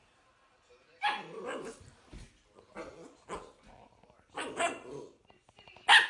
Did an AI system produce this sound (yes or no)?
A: no